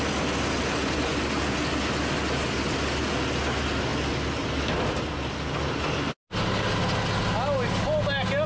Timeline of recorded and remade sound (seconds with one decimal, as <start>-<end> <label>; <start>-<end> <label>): 0.0-8.5 recorded